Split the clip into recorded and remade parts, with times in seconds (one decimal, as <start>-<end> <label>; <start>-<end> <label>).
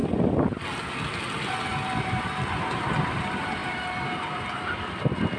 0.0-5.4 recorded